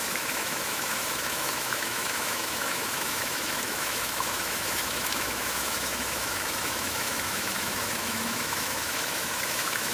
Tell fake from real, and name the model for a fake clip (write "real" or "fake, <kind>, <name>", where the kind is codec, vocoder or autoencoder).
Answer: fake, autoencoder, DAC-VAE